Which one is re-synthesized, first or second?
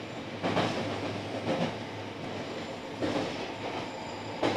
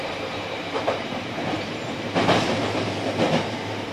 second